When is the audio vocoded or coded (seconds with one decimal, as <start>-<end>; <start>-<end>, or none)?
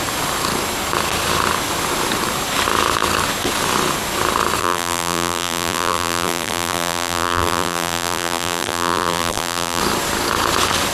4.6-9.8